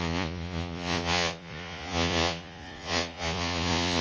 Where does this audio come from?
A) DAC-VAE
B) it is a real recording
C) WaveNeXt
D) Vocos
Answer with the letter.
D